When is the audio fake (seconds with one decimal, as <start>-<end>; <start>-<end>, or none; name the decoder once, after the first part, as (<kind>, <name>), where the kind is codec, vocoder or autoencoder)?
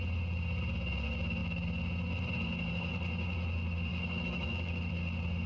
3.9-4.9 (autoencoder, DAC-VAE)